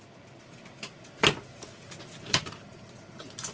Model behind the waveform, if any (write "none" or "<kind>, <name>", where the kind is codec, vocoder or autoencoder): none